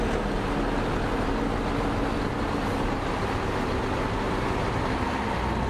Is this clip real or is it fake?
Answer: real